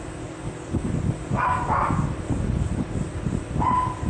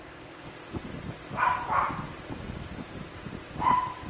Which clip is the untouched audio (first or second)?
first